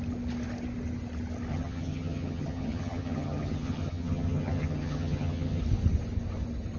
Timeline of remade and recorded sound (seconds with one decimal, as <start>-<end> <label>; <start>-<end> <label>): 0.0-1.5 recorded; 1.5-5.6 remade; 5.6-6.8 recorded